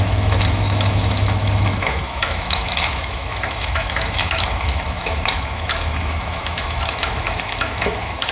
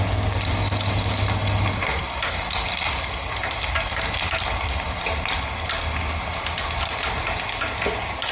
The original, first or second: second